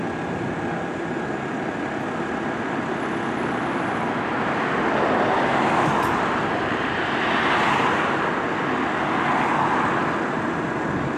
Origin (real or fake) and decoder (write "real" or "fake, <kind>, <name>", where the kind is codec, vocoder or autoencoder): real